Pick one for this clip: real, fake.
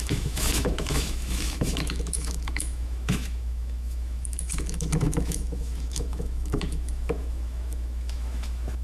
fake